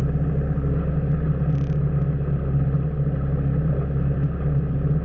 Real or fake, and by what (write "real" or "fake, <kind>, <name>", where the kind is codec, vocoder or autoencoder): real